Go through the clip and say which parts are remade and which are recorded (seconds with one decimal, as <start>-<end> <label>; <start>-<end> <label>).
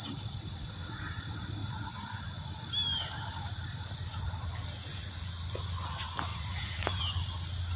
0.0-1.6 recorded; 1.6-2.2 remade; 2.2-4.8 recorded; 4.8-5.3 remade; 5.3-6.3 recorded; 6.3-7.0 remade; 7.0-7.8 recorded